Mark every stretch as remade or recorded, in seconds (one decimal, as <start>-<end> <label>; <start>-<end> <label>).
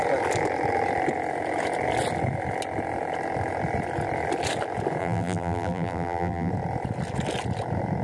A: 0.0-5.0 recorded; 5.0-6.5 remade; 6.5-8.0 recorded